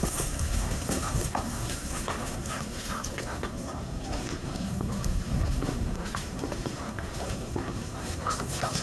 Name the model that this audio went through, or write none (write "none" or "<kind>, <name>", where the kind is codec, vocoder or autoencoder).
codec, SNAC